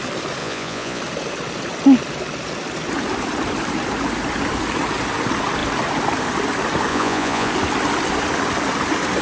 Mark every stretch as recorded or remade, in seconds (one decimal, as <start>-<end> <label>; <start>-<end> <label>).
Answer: 0.0-0.4 recorded; 0.4-1.0 remade; 1.0-6.9 recorded; 6.9-7.5 remade; 7.5-9.2 recorded